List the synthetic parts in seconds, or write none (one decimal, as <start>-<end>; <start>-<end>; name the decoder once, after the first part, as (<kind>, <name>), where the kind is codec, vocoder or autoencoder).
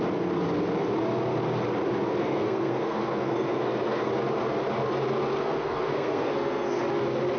2.2-4.1 (codec, SNAC); 5.4-6.8